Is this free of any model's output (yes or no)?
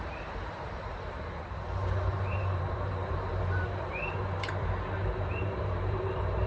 no